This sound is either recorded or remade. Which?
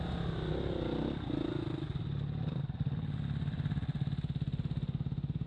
recorded